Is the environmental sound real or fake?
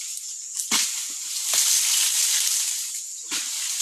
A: real